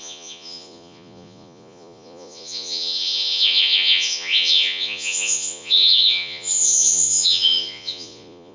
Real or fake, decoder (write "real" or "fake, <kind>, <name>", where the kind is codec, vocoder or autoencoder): fake, vocoder, Vocos